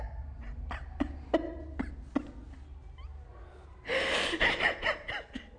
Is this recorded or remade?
recorded